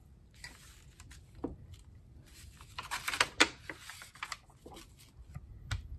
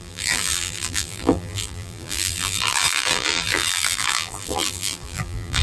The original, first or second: first